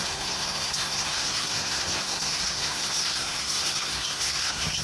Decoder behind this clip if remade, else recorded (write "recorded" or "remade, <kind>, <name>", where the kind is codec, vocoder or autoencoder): remade, codec, SNAC